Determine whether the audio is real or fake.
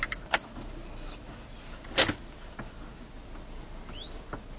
real